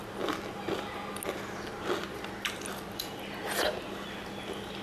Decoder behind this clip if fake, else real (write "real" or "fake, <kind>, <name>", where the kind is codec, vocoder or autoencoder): real